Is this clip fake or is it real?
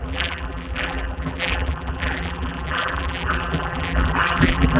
fake